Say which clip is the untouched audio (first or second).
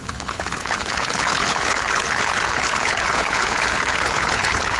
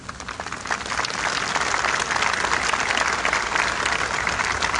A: second